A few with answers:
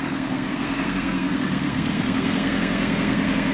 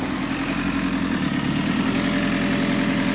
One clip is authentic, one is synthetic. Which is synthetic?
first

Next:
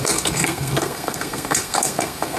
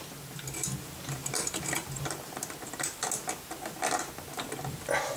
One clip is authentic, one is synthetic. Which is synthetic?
first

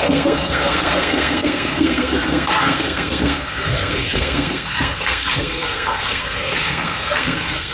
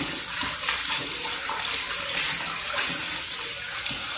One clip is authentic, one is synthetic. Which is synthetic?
first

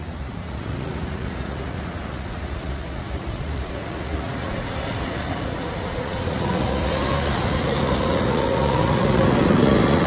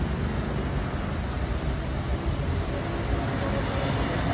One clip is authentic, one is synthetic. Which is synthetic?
first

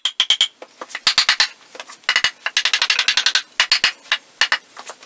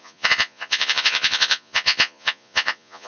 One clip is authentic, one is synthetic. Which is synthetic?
second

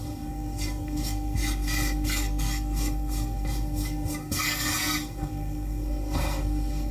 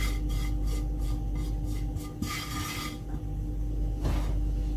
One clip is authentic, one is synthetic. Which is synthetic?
first